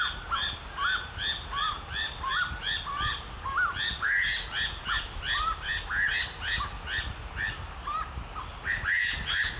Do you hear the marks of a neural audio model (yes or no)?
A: no